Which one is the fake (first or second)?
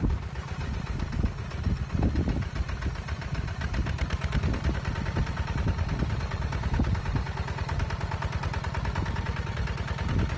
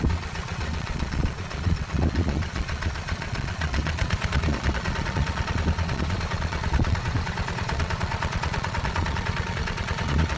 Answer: second